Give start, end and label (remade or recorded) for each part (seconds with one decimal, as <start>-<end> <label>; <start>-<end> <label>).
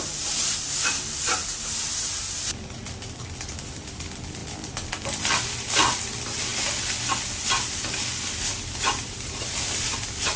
0.0-10.4 recorded